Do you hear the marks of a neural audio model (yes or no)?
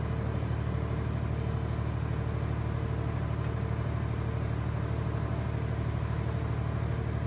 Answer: no